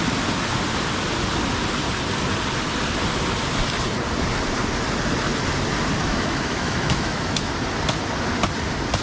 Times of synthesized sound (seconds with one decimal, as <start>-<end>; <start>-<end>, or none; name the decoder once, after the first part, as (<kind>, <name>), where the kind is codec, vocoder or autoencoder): 6.0-7.5 (autoencoder, DAC-VAE)